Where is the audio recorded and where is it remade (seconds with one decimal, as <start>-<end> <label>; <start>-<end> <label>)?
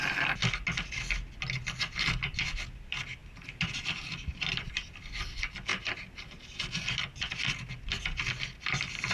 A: 0.0-9.1 recorded